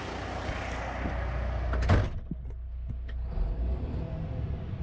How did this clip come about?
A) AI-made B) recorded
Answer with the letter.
B